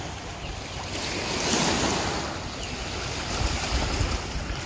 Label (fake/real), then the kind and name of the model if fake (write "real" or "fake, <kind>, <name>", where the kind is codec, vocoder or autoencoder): real